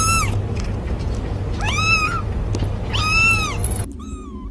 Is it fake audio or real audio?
real